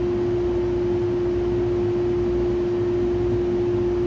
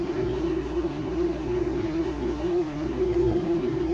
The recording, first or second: first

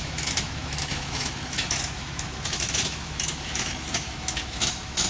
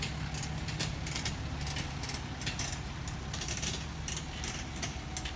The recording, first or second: second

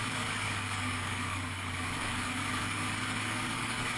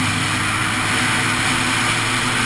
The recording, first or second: second